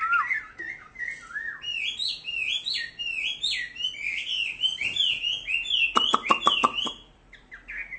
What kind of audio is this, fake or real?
real